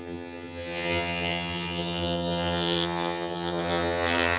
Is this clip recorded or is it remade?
remade